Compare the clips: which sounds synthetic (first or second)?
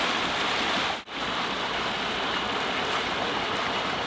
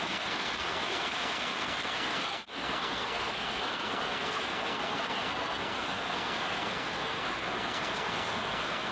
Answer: second